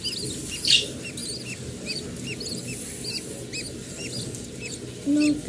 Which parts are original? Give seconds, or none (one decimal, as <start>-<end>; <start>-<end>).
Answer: 0.0-5.5